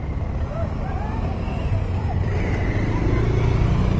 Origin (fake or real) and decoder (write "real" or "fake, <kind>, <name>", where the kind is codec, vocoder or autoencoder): real